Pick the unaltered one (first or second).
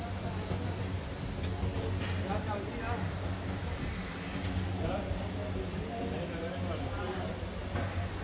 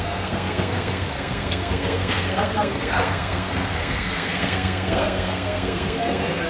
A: first